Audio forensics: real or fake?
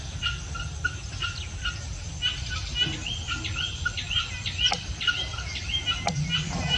real